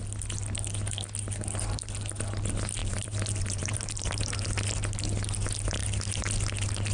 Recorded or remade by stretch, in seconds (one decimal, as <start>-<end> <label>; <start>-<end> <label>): 0.0-2.8 recorded; 2.8-4.3 remade; 4.3-6.9 recorded